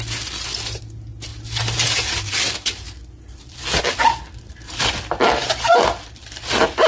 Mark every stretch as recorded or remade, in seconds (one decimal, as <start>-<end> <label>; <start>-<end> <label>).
0.0-6.9 recorded